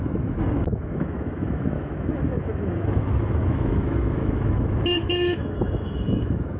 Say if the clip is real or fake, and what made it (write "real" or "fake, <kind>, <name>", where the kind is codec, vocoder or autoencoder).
fake, autoencoder, DAC-VAE